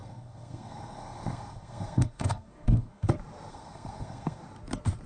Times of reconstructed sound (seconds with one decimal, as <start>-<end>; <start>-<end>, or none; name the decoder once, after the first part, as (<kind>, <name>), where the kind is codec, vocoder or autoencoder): 0.0-3.1 (codec, SNAC); 3.5-4.4